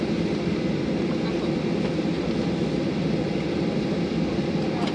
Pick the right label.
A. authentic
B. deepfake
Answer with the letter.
A